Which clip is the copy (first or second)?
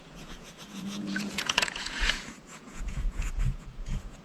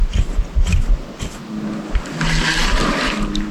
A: first